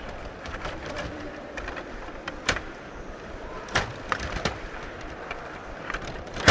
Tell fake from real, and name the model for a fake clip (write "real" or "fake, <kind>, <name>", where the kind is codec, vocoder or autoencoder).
fake, vocoder, BigVGAN v2